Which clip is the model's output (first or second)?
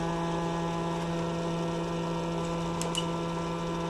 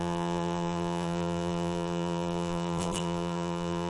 second